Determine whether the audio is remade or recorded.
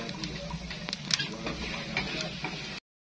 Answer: recorded